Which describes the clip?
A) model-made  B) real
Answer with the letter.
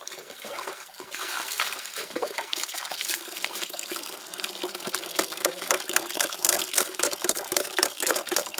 A